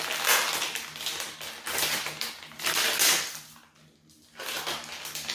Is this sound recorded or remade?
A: recorded